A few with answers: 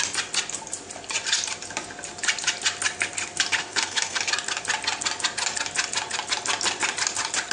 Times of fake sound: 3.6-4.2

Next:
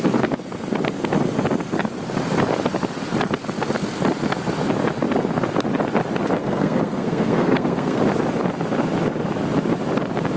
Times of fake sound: 6.4-8.0